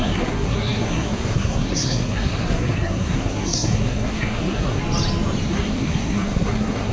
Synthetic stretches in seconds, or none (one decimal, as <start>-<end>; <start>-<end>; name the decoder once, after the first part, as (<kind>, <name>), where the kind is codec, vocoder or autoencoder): 0.0-4.8 (codec, SNAC); 5.5-6.9